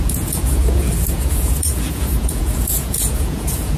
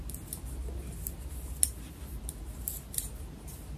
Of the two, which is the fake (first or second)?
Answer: first